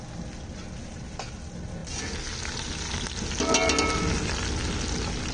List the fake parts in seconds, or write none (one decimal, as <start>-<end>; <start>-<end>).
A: none